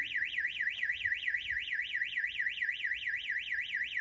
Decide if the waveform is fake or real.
real